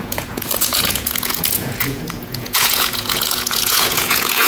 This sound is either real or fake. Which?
fake